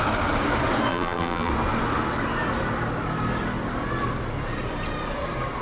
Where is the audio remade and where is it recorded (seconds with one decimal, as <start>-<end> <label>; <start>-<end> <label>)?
0.0-0.9 recorded; 0.9-1.5 remade; 1.5-5.6 recorded